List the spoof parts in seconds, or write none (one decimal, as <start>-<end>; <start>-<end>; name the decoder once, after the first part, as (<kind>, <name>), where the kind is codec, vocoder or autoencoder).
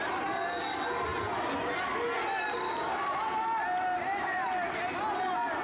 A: none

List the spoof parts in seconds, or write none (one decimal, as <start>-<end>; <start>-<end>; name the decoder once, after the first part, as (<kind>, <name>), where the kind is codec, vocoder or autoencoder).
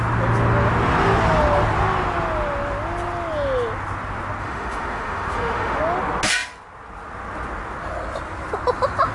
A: 4.4-5.8 (autoencoder, DAC-VAE)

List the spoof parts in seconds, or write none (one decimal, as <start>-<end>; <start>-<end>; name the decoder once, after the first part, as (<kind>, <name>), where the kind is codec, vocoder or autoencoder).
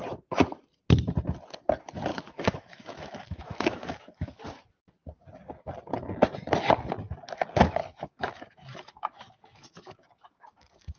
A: 2.1-4.4 (autoencoder, DAC-VAE); 7.8-11.0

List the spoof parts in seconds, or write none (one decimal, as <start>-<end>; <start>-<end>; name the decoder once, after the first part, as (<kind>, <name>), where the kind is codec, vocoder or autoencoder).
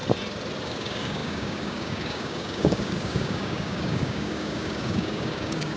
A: 0.6-5.8 (codec, DAC)